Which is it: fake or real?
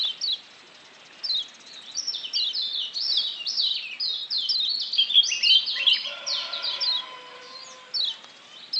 real